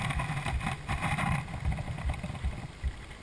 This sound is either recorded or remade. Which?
recorded